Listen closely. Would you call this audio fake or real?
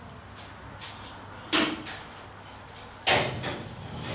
real